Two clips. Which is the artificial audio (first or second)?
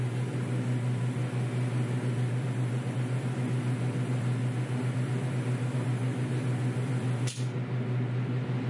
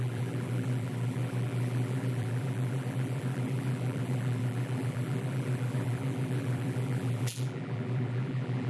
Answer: second